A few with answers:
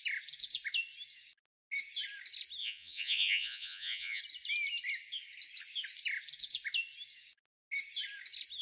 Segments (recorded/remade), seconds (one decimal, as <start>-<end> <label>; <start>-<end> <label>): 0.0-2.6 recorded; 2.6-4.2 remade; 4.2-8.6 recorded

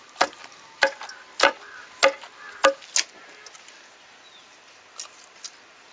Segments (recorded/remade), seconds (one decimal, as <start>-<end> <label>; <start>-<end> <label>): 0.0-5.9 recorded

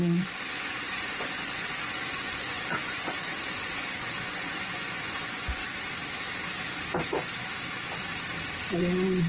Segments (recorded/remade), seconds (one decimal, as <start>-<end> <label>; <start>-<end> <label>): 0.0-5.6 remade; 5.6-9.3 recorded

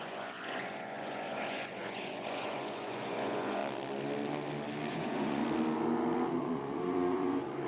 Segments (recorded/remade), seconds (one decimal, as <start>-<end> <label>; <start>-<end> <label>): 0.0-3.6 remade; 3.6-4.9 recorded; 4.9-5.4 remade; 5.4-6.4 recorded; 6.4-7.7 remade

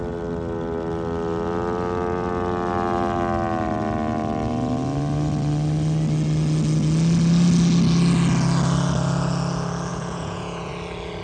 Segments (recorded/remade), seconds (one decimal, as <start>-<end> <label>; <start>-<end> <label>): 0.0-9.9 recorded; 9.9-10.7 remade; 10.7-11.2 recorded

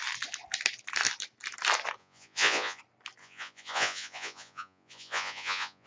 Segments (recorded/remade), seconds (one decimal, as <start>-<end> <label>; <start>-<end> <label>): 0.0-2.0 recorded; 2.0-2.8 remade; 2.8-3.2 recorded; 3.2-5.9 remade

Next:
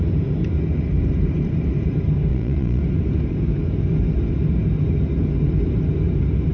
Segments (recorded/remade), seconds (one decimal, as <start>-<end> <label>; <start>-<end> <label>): 0.0-2.3 recorded; 2.3-2.8 remade; 2.8-6.5 recorded